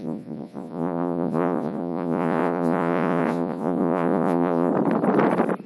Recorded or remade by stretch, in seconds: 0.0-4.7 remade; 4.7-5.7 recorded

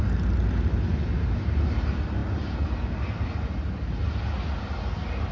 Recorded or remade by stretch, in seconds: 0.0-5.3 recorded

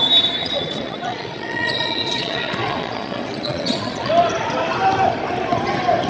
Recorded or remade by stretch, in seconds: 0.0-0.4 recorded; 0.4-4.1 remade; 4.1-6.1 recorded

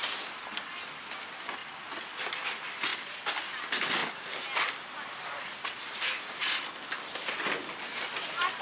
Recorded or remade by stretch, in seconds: 0.0-8.6 recorded

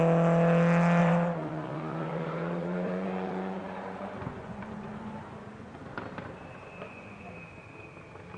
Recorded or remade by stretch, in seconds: 0.0-1.0 recorded; 1.0-5.9 remade; 5.9-6.6 recorded; 6.6-7.3 remade; 7.3-8.4 recorded

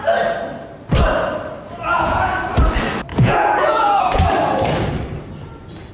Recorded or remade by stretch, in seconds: 0.0-1.8 recorded; 1.8-2.3 remade; 2.3-3.1 recorded; 3.1-4.2 remade; 4.2-5.9 recorded